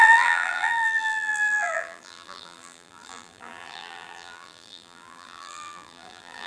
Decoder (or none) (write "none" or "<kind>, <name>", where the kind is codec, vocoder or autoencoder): vocoder, BigVGAN v2